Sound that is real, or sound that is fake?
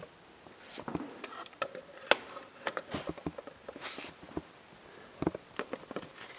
real